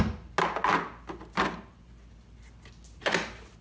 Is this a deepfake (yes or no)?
no